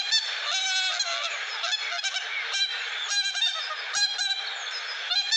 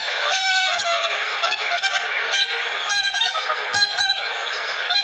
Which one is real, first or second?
first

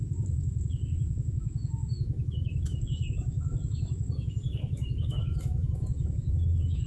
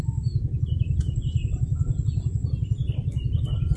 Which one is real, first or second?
second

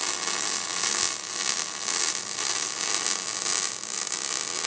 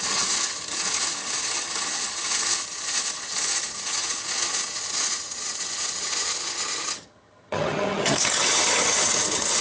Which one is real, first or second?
first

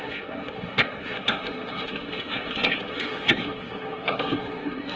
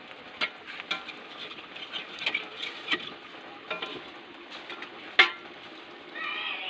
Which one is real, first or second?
second